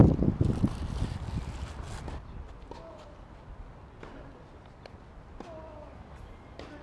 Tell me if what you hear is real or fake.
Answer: real